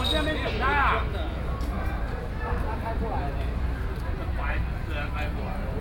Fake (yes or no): no